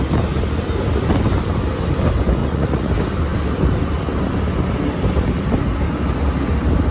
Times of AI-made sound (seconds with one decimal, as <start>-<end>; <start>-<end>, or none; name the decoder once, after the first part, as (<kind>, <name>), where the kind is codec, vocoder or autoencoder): 2.4-2.9 (vocoder, Vocos)